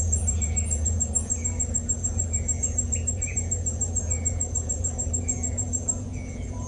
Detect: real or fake fake